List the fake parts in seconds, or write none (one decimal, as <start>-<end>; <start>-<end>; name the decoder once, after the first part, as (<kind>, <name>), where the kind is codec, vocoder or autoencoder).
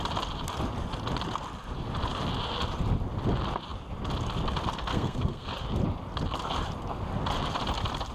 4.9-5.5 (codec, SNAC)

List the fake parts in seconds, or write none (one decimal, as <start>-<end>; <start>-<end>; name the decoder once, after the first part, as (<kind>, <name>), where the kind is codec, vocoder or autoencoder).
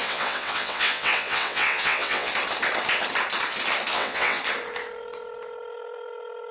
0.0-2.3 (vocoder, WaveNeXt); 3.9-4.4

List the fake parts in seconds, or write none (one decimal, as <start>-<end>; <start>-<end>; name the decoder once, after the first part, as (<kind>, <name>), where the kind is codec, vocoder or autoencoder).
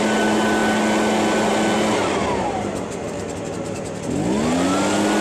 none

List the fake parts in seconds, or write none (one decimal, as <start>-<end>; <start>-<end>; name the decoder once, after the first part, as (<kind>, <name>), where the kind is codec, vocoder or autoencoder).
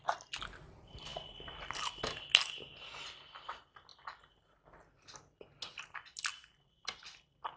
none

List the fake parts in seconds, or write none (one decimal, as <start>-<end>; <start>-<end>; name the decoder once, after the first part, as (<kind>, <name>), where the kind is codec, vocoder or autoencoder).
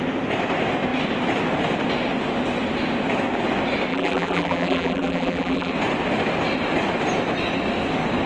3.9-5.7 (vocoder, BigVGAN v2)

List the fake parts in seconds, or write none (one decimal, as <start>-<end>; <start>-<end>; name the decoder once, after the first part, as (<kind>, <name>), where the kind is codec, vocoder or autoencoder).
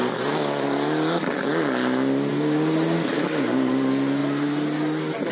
none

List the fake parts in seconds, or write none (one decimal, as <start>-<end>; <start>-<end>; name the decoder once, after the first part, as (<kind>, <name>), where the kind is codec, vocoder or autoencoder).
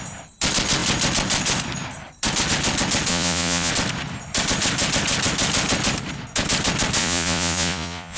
3.1-3.7 (vocoder, Vocos); 7.0-8.2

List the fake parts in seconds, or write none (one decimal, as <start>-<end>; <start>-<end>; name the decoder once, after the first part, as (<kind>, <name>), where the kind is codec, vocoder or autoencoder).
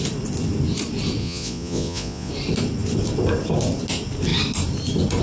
1.2-2.3 (vocoder, Vocos)